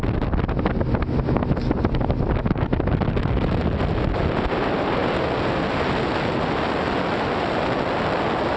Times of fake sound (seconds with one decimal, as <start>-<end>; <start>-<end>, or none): none